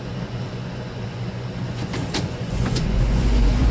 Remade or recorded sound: remade